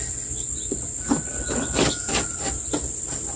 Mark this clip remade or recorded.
recorded